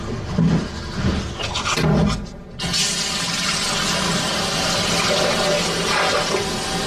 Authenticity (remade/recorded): recorded